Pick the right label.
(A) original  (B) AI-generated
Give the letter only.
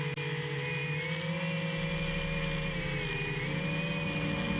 A